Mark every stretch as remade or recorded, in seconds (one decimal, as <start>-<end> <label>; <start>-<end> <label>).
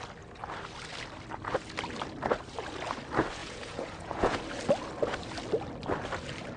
0.0-3.4 recorded; 3.4-4.4 remade; 4.4-6.6 recorded